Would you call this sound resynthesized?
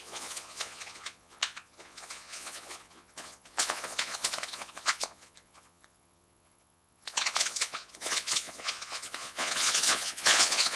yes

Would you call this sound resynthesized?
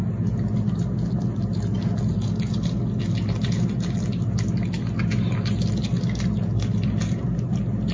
no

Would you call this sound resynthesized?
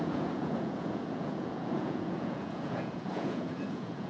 yes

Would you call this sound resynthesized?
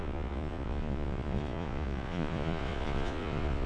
yes